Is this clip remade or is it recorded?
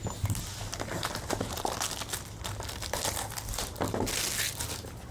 recorded